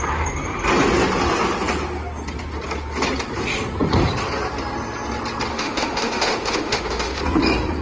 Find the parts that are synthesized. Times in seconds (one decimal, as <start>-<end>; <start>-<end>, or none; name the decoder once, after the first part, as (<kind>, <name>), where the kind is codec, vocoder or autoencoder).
5.5-7.2 (autoencoder, DAC-VAE)